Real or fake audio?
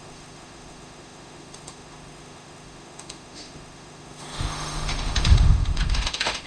fake